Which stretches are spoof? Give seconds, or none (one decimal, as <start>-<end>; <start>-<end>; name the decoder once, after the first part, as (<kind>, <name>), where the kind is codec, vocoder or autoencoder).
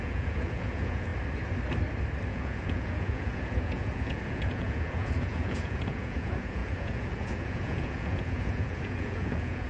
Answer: 0.0-1.1 (vocoder, Vocos); 2.3-9.7